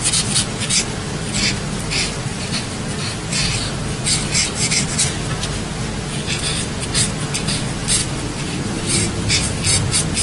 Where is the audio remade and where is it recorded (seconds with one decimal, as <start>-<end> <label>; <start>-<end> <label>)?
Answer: 0.0-2.3 recorded; 2.3-3.7 remade; 3.7-8.0 recorded; 8.0-9.6 remade; 9.6-10.2 recorded